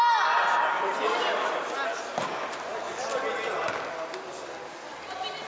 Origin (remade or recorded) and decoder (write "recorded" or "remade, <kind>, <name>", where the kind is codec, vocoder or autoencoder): recorded